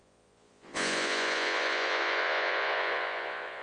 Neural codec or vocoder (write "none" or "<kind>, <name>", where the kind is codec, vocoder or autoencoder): vocoder, Vocos